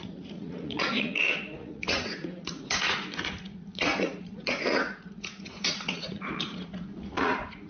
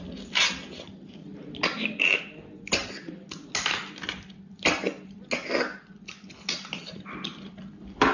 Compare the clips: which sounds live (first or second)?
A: second